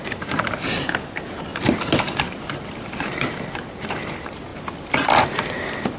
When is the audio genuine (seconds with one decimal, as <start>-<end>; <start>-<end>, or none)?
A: 1.5-2.2; 4.5-5.2